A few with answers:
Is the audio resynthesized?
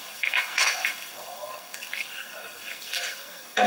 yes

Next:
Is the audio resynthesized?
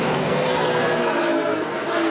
yes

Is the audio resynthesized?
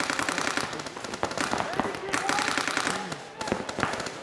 no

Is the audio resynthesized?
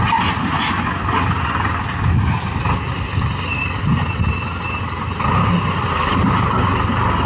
no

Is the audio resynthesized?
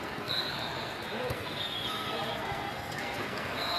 yes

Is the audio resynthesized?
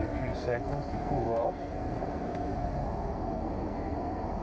yes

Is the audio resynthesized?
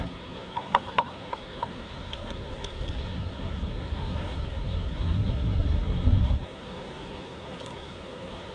yes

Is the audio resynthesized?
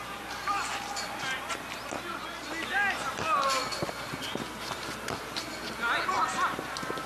no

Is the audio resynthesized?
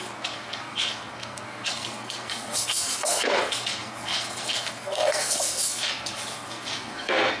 yes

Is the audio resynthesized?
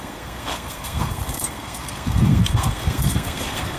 yes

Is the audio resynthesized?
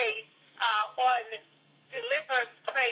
yes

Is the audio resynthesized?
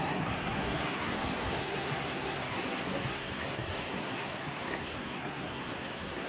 yes